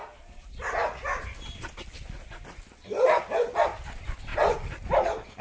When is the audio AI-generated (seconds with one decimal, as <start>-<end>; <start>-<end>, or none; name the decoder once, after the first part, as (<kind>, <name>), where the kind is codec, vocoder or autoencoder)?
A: none